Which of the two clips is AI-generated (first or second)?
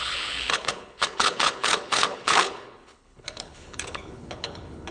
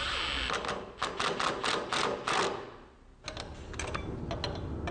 first